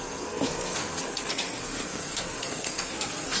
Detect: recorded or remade remade